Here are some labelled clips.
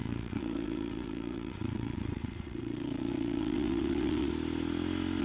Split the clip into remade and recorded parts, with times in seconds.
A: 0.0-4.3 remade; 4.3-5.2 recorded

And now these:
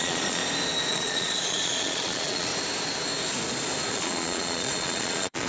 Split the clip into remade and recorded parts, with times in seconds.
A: 0.0-0.4 remade; 0.4-0.9 recorded; 0.9-2.5 remade; 2.5-3.9 recorded; 3.9-5.5 remade